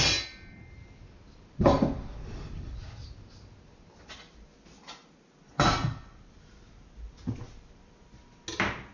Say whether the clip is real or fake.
real